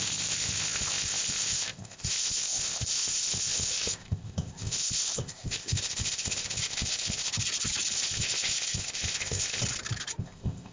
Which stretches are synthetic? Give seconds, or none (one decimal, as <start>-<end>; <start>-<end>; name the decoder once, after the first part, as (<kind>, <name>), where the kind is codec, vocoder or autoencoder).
0.0-7.3 (codec, ZipCodec); 7.9-9.6; 10.2-10.7